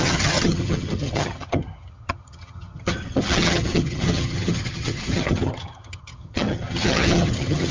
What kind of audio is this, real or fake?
fake